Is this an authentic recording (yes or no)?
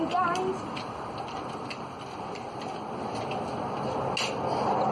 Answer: yes